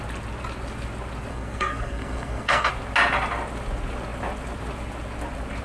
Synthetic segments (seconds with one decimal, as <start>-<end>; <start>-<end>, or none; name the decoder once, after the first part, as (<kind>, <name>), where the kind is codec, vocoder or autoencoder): 1.3-2.7 (codec, SNAC)